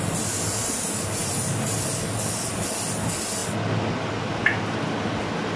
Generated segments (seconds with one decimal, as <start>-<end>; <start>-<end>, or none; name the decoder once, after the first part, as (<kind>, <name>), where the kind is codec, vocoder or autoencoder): none